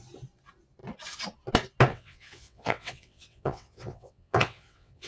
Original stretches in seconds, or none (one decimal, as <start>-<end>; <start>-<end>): 0.0-1.9